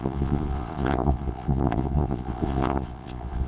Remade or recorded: remade